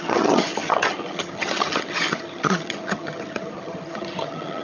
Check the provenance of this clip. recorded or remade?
remade